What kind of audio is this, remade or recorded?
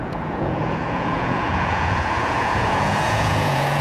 remade